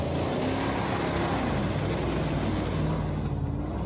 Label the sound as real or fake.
real